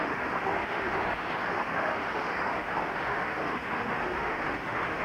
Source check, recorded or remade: remade